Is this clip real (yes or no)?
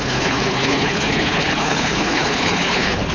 no